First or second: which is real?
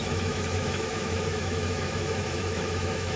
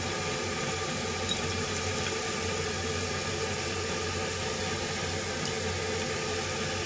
second